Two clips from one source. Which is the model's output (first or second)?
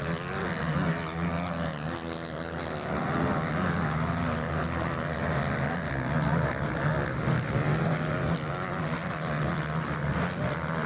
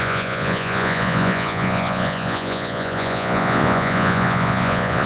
second